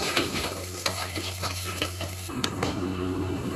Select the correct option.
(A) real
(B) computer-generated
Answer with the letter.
B